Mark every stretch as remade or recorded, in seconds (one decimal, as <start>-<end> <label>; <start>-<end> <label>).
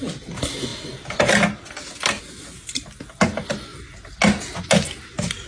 0.0-5.5 recorded